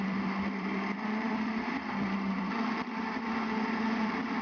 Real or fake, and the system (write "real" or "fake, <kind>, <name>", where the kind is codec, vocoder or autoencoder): fake, vocoder, BigVGAN v2